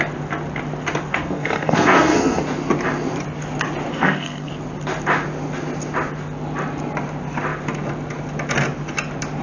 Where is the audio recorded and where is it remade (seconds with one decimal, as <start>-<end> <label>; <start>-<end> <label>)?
0.0-1.1 recorded; 1.1-2.4 remade; 2.4-3.9 recorded; 3.9-4.5 remade; 4.5-9.4 recorded